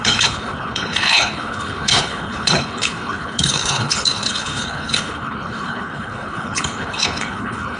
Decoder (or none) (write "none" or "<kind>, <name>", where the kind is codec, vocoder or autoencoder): codec, HILCodec